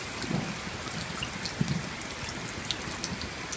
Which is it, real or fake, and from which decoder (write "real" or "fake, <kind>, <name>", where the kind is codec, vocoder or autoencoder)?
real